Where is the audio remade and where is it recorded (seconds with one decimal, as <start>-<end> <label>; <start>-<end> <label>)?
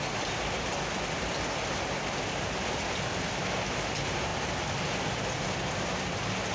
0.0-6.5 recorded